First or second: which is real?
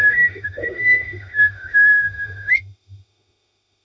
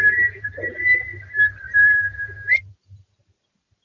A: second